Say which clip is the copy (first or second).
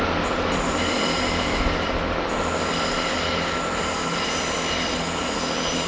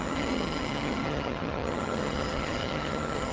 second